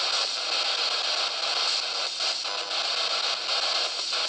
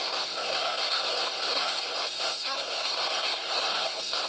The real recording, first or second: first